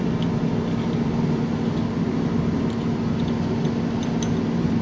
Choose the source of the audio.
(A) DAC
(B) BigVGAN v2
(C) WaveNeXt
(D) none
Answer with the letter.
D